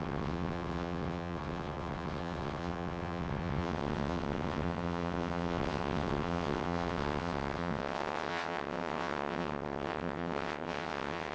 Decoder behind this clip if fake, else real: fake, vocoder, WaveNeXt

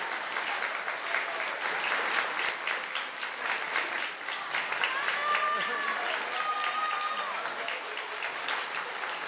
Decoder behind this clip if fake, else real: real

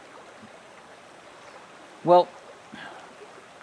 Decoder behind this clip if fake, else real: real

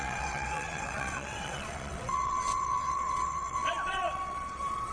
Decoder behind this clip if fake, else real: fake, vocoder, WaveNeXt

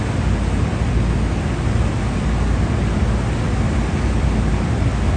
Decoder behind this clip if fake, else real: real